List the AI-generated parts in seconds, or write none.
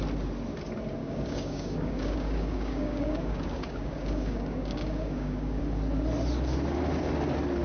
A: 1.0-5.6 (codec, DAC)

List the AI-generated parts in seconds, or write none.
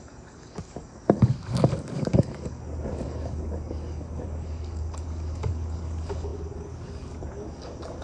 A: 0.0-8.0 (codec, DAC)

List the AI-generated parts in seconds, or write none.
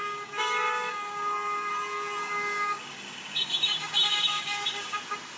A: 0.0-1.7 (codec, DAC); 2.2-5.0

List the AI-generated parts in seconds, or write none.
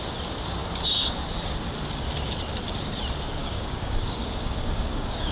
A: 3.4-5.3 (codec, DAC)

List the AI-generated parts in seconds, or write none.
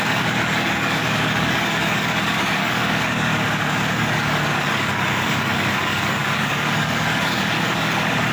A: 0.0-3.3 (codec, DAC); 3.9-8.3